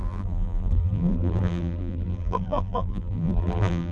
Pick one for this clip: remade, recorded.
remade